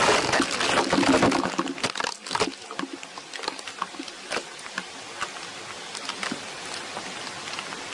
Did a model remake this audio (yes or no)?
no